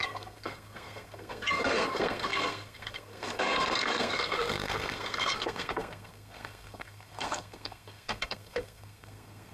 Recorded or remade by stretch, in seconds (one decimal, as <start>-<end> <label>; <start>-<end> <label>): 0.0-9.5 remade